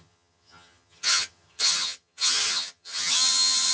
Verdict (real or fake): fake